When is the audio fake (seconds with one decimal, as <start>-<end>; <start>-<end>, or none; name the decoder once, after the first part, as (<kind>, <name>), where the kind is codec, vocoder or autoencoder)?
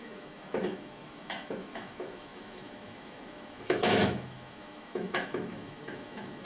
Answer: 0.0-6.5 (autoencoder, DAC-VAE)